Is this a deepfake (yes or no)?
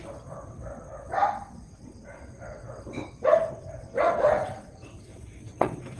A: yes